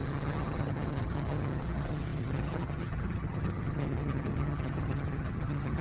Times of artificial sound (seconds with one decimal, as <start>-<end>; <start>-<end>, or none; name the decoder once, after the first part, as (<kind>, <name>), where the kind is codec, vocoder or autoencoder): 0.0-5.8 (vocoder, HiFi-GAN)